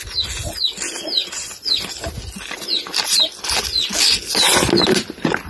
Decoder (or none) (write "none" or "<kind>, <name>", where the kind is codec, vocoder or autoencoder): none